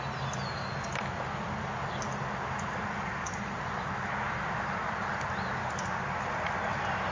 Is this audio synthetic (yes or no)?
no